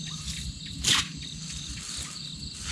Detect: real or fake real